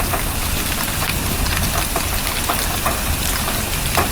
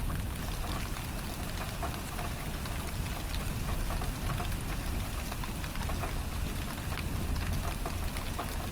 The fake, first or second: first